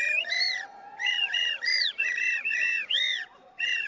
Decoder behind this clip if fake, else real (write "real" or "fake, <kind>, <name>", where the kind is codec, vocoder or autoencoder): fake, vocoder, Vocos